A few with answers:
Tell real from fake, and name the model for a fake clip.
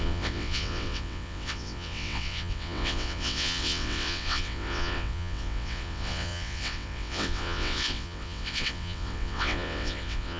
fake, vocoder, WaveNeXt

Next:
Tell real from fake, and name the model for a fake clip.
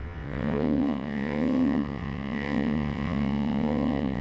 fake, vocoder, WaveNeXt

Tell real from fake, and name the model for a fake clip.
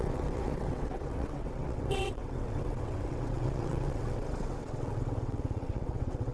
fake, vocoder, WaveNeXt